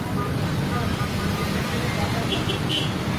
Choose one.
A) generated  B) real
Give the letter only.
B